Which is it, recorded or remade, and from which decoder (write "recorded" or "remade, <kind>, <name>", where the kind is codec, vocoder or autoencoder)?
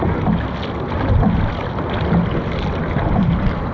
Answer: recorded